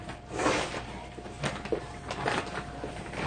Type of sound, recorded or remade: recorded